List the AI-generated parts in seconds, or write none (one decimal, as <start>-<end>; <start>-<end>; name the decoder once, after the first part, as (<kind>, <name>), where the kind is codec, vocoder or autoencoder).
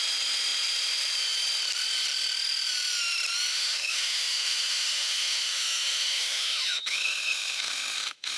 3.5-8.4 (autoencoder, DAC-VAE)